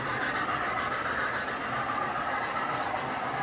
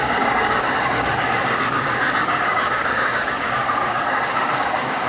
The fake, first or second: second